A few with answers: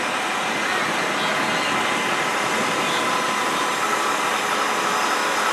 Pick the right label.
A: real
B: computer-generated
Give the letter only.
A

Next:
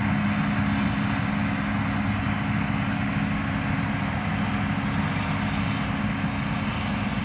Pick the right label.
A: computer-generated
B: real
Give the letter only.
B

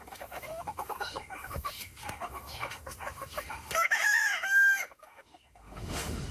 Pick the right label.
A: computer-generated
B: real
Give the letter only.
A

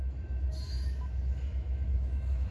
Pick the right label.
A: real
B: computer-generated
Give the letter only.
B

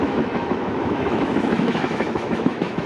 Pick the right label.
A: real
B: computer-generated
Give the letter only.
B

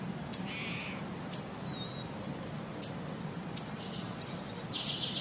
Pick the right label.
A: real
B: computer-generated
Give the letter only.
A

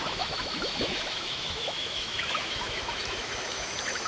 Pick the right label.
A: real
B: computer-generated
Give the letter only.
B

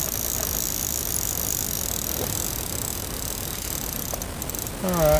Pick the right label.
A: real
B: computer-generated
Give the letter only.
A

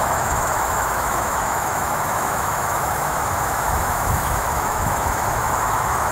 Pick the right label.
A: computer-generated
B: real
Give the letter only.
A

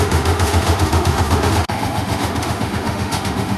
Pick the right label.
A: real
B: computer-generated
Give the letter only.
B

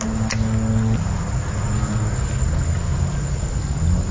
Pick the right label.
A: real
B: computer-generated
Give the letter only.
A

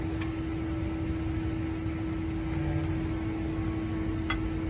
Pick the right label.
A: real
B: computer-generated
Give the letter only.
A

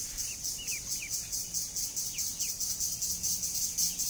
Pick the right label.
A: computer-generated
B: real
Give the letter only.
B